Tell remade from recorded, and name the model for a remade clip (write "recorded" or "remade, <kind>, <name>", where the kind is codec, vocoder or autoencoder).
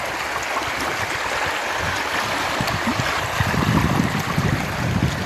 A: recorded